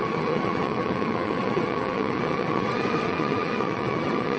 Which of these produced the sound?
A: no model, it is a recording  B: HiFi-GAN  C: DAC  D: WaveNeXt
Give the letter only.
D